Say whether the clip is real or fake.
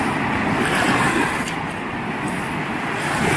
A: real